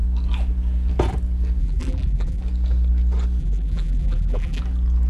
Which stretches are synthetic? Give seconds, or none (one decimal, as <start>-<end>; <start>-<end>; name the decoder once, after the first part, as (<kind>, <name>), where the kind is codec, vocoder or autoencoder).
1.6-2.4 (vocoder, BigVGAN v2); 3.4-4.6